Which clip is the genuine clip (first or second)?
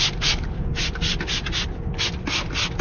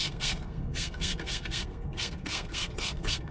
first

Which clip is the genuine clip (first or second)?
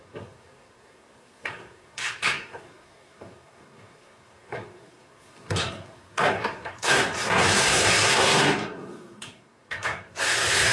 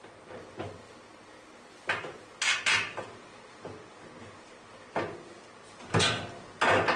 second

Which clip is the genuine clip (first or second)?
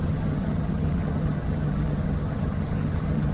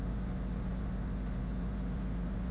second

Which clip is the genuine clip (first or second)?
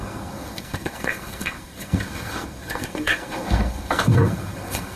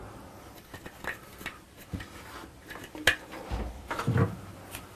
second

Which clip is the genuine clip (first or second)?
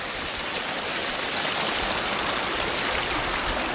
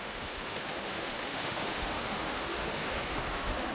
first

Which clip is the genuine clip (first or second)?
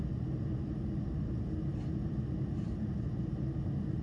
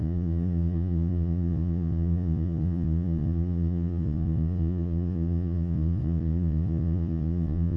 first